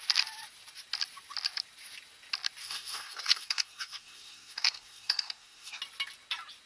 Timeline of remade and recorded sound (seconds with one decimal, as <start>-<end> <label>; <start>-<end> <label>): 0.0-2.6 recorded; 2.6-5.8 remade; 5.8-6.7 recorded

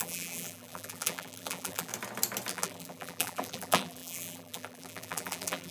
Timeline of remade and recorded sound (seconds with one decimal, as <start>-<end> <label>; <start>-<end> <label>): 0.0-1.9 remade; 1.9-2.5 recorded; 2.5-5.7 remade

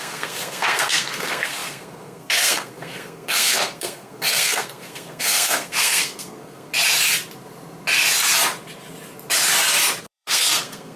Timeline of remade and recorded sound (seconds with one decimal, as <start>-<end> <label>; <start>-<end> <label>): 0.0-6.7 remade; 6.7-10.0 recorded; 10.0-11.0 remade

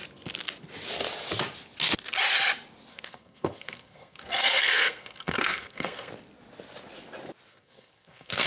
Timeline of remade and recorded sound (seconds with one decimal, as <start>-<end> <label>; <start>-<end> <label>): 0.0-2.9 recorded; 2.9-6.1 remade; 6.1-7.5 recorded; 7.5-8.5 remade

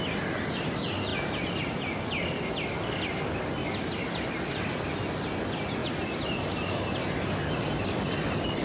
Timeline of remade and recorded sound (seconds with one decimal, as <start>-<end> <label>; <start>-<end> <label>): 0.0-8.6 recorded

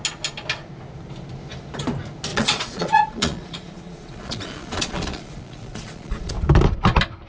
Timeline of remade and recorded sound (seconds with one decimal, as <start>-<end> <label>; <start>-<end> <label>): 0.0-2.3 recorded; 2.3-6.3 remade; 6.3-7.3 recorded

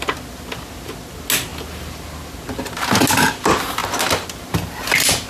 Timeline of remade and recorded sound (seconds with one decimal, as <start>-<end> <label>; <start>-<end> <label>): 0.0-5.3 recorded